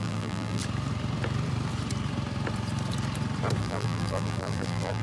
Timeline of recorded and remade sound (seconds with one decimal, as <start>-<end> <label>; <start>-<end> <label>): 0.0-0.6 remade; 0.6-3.6 recorded; 3.6-5.0 remade